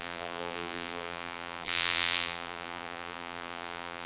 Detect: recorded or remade remade